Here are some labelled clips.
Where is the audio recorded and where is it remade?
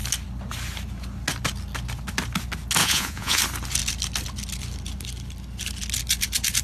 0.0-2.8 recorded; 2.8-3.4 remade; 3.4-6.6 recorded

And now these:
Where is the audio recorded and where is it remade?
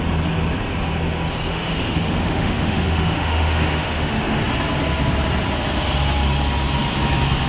0.0-1.5 recorded; 1.5-4.4 remade; 4.4-7.5 recorded